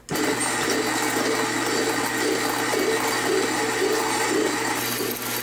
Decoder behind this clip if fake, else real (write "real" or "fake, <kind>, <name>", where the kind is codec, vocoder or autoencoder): real